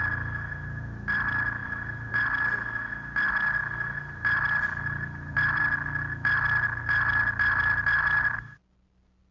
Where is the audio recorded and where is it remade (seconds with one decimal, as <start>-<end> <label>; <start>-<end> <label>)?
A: 0.0-1.6 recorded; 1.6-2.1 remade; 2.1-3.6 recorded; 3.6-5.6 remade; 5.6-9.3 recorded

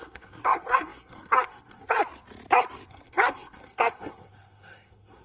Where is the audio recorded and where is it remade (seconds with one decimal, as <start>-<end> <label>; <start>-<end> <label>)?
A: 0.0-2.0 remade; 2.0-2.9 recorded; 2.9-5.2 remade

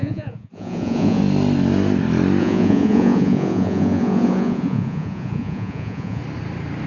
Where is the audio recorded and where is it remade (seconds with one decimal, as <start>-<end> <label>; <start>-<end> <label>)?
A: 0.0-1.2 remade; 1.2-2.4 recorded; 2.4-6.2 remade; 6.2-6.9 recorded

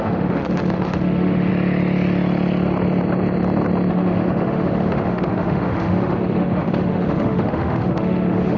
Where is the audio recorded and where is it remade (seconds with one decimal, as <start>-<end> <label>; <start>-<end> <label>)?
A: 0.0-1.5 remade; 1.5-3.9 recorded; 3.9-8.6 remade

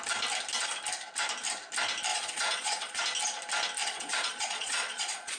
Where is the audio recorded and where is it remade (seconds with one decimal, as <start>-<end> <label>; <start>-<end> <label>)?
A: 0.0-2.1 recorded; 2.1-3.0 remade; 3.0-3.8 recorded; 3.8-5.4 remade

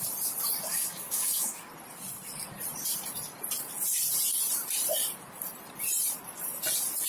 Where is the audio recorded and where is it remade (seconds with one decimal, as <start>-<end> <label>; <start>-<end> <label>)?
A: 0.0-0.7 recorded; 0.7-1.7 remade; 1.7-7.1 recorded

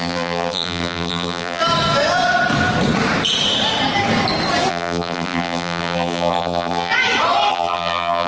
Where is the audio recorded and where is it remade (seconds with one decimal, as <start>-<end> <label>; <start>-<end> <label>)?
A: 0.0-1.6 remade; 1.6-4.7 recorded; 4.7-6.9 remade; 6.9-7.5 recorded; 7.5-8.3 remade

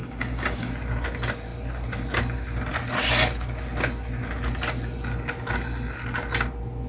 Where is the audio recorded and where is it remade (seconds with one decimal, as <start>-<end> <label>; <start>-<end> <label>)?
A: 0.0-0.7 remade; 0.7-6.9 recorded